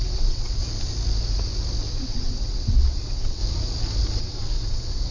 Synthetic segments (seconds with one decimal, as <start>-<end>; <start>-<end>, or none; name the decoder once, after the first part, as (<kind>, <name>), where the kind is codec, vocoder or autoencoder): 0.0-0.6 (vocoder, WaveNeXt); 1.9-3.4; 4.2-5.1